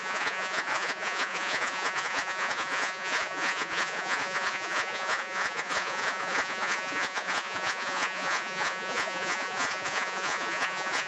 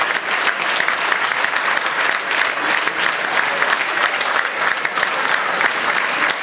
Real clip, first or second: second